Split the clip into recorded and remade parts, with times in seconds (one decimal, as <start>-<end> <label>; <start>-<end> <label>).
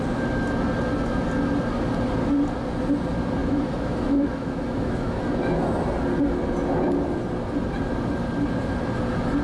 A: 0.0-3.4 recorded; 3.4-5.2 remade; 5.2-9.4 recorded